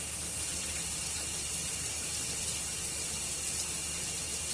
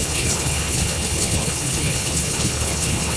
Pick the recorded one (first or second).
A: first